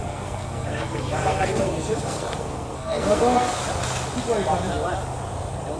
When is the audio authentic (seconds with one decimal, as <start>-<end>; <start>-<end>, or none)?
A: 3.5-5.8